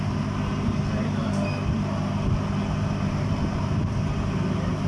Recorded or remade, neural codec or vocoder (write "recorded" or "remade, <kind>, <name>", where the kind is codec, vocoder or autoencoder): recorded